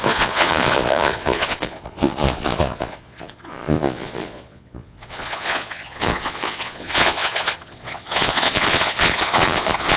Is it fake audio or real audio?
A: fake